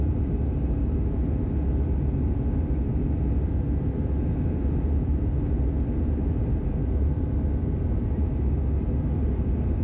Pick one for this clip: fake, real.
fake